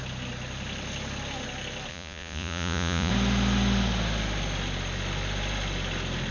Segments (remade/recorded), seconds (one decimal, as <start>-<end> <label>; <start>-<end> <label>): 0.0-1.9 recorded; 1.9-3.1 remade; 3.1-6.3 recorded